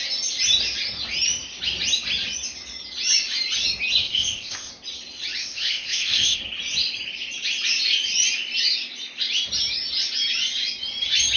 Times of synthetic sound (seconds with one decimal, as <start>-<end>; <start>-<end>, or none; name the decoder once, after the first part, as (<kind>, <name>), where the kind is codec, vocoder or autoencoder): 4.0-4.7 (codec, ZipCodec); 5.4-6.4